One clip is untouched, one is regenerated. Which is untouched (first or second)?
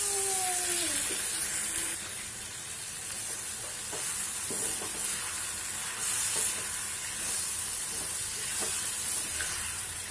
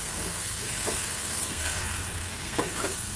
first